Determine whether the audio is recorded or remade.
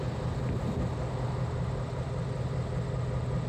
recorded